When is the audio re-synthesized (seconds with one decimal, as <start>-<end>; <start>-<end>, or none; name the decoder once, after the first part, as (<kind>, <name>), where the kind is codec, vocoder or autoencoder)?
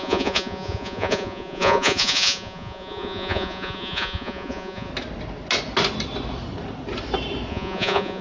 0.0-4.9 (vocoder, Vocos); 7.5-8.2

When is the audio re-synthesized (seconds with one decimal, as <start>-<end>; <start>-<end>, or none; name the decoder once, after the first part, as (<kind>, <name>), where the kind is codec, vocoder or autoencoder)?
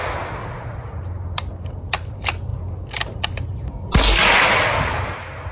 0.4-1.0 (vocoder, Vocos)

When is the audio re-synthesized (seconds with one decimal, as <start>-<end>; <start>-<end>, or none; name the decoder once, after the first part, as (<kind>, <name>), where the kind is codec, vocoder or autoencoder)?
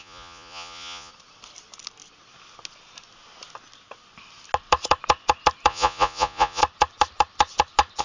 0.0-1.1 (vocoder, Vocos); 5.7-6.6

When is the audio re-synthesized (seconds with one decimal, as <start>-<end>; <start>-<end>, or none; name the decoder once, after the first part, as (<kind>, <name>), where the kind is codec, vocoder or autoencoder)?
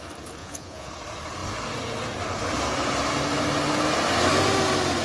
0.4-0.9 (vocoder, Vocos)